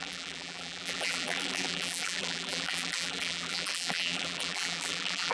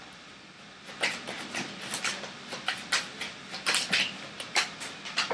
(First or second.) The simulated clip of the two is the first